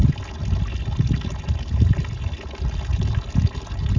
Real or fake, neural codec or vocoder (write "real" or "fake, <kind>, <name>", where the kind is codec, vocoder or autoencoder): real